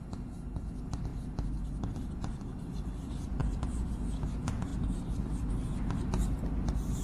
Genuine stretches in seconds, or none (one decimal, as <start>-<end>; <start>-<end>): 0.0-1.1; 1.8-3.4; 4.2-4.7; 5.5-7.0